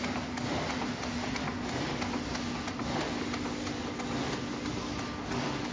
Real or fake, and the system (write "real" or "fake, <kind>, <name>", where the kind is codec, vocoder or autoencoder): real